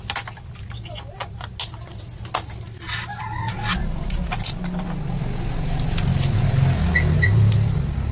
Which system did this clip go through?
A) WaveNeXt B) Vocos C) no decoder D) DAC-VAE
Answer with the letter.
C